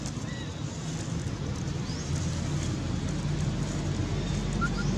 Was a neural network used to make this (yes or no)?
no